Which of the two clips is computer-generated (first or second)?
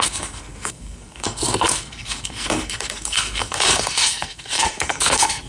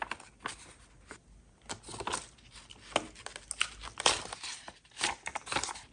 first